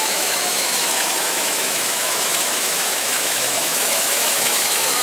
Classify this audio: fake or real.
fake